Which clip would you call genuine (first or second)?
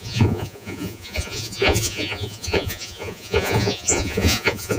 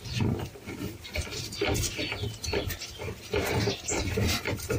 second